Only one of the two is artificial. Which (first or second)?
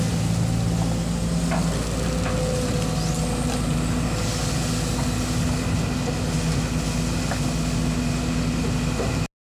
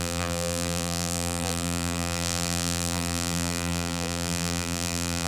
second